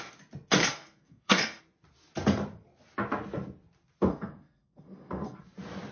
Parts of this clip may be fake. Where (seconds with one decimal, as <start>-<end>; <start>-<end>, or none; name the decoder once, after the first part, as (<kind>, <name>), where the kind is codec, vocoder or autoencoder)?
0.6-1.6 (codec, SNAC); 4.1-5.4

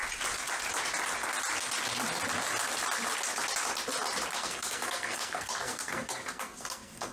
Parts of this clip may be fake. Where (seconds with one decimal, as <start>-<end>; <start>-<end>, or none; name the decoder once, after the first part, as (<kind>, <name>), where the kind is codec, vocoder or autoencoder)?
4.3-7.1 (codec, SNAC)

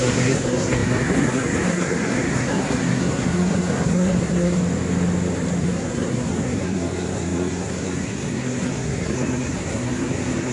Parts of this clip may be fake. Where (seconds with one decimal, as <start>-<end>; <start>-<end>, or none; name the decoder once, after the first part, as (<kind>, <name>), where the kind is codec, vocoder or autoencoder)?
0.0-4.6 (codec, SNAC); 5.6-10.5